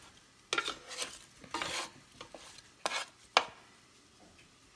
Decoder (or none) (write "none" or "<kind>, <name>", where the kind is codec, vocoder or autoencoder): none